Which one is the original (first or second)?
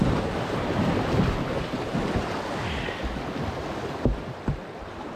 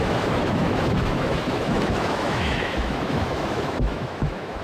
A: first